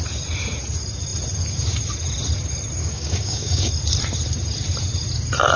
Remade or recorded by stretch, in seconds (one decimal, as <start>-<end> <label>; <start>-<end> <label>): 0.0-2.8 recorded; 2.8-3.7 remade; 3.7-5.6 recorded